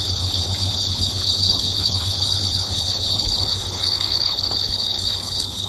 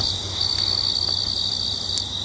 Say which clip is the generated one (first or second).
first